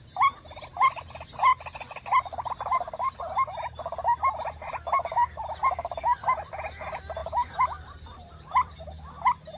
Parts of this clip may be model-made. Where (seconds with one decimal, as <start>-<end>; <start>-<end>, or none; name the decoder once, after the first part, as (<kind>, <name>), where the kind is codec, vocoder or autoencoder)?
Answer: 7.2-8.8 (vocoder, BigVGAN v2)